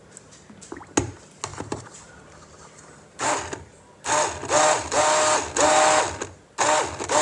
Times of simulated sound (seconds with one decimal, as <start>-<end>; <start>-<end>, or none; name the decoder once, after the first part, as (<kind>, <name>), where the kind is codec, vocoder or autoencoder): 1.5-3.3 (vocoder, BigVGAN v2)